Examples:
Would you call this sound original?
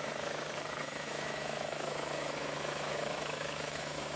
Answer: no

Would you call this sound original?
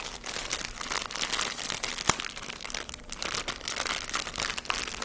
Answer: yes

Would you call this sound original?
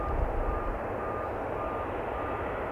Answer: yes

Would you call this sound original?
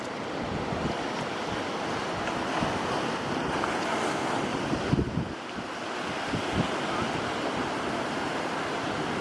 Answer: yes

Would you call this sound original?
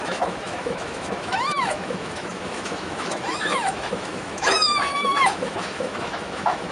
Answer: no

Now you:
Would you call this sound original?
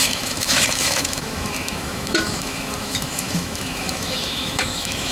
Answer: no